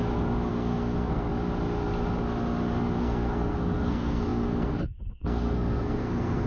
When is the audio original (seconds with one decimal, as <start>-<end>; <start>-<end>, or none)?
0.0-0.5; 1.3-3.0